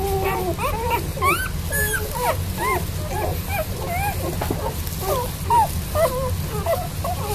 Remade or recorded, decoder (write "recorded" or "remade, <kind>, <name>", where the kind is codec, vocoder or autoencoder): recorded